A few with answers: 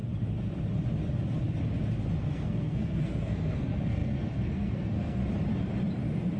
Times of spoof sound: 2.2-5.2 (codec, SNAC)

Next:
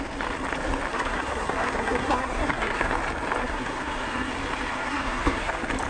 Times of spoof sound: 0.9-2.9 (codec, SNAC); 3.4-4.3; 4.7-5.5

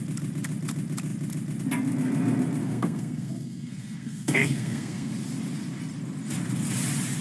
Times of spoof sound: 2.6-5.1 (codec, SNAC)

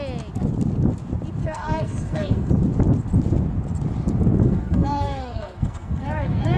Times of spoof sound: 1.4-2.5 (codec, SNAC); 4.4-6.6

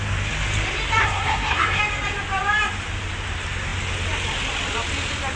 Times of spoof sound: 1.0-1.8 (codec, SNAC)

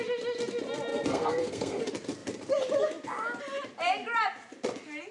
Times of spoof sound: 0.9-1.8 (codec, SNAC)

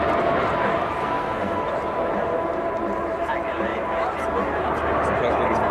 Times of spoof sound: 1.0-1.6 (codec, SNAC)